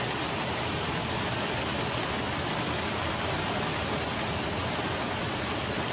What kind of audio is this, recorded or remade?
recorded